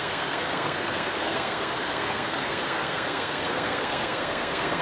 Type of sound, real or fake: fake